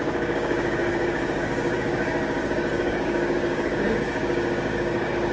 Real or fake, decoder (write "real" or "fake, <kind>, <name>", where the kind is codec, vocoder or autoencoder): fake, codec, DAC